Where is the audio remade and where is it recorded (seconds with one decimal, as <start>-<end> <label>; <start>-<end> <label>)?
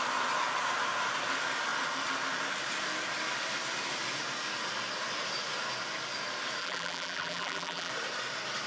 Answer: 0.0-6.6 recorded; 6.6-7.9 remade; 7.9-8.7 recorded